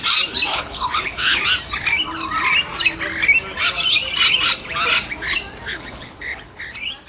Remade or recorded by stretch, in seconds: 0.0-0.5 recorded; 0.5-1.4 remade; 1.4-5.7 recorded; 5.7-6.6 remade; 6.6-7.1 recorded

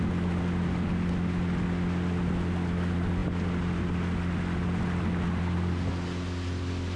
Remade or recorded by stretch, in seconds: 0.0-7.0 recorded

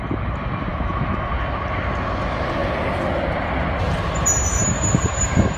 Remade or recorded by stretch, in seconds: 0.0-0.7 recorded; 0.7-1.3 remade; 1.3-5.6 recorded

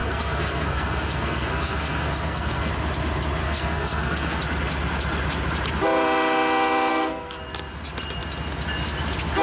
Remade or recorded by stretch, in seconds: 0.0-2.7 remade; 2.7-3.4 recorded; 3.4-4.4 remade; 4.4-6.9 recorded; 6.9-7.4 remade; 7.4-9.4 recorded

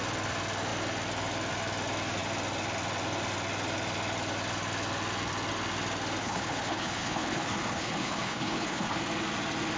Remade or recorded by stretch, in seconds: 0.0-6.2 recorded; 6.2-9.0 remade; 9.0-9.8 recorded

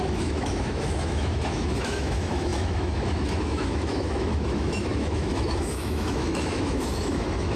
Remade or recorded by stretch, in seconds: 0.0-7.6 remade

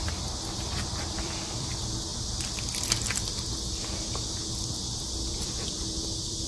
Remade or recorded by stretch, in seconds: 0.0-2.1 remade; 2.1-5.0 recorded; 5.0-6.5 remade